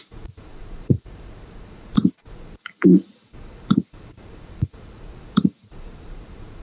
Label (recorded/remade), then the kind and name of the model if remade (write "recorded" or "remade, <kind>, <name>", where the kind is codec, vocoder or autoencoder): remade, vocoder, Vocos